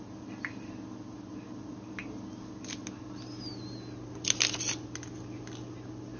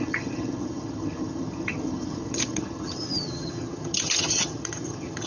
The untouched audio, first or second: first